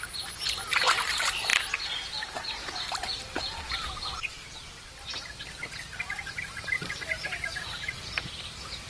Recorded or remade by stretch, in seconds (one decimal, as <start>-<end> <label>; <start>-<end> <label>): 0.0-1.5 remade; 1.5-3.6 recorded; 3.6-8.9 remade